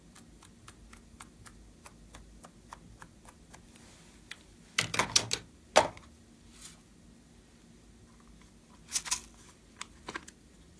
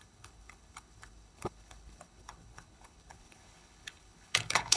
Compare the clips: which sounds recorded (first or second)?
first